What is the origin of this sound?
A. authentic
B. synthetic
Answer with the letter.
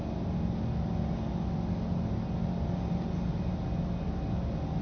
A